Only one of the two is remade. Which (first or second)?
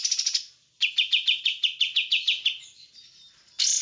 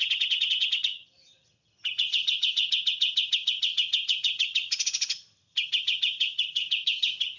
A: second